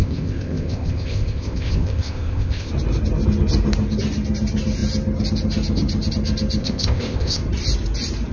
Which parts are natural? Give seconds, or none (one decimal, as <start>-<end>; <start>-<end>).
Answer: 2.7-6.6; 7.4-8.3